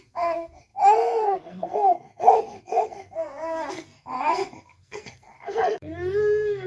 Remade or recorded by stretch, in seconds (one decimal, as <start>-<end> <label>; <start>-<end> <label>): 0.0-6.7 remade